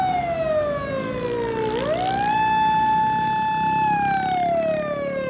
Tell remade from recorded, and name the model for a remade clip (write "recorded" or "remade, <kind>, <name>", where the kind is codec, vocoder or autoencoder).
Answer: recorded